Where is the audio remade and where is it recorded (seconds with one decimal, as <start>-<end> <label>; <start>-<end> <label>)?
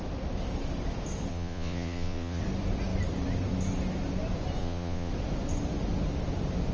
0.0-1.3 recorded; 1.3-2.4 remade; 2.4-4.6 recorded; 4.6-5.1 remade; 5.1-6.7 recorded